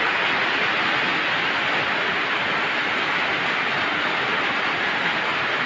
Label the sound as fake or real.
real